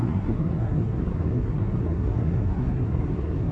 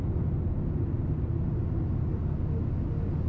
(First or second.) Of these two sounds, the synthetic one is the first